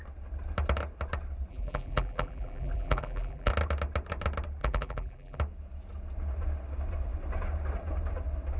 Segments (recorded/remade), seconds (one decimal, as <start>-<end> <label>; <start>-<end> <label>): 0.0-1.5 recorded; 1.5-3.5 remade; 3.5-4.6 recorded; 4.6-5.4 remade; 5.4-8.6 recorded